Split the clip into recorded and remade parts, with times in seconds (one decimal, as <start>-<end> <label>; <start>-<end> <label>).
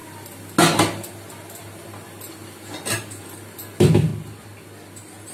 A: 0.0-5.3 recorded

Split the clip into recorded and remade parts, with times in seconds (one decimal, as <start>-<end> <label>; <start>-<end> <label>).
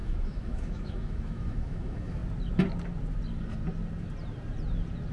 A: 0.0-2.2 remade; 2.2-5.1 recorded